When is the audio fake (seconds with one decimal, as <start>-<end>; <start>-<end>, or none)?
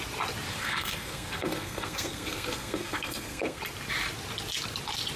0.5-3.6